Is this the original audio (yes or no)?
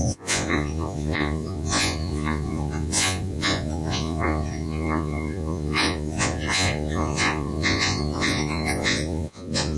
no